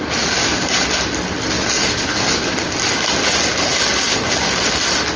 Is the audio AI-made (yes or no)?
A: no